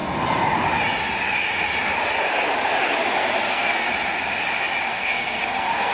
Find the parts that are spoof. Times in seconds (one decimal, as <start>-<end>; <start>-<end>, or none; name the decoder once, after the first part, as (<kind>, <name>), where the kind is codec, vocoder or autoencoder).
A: 3.5-3.9 (codec, SNAC); 4.9-5.9